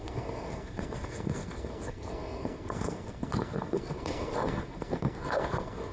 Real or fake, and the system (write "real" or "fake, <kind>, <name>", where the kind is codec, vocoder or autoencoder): fake, codec, SNAC